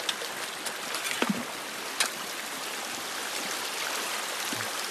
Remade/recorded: recorded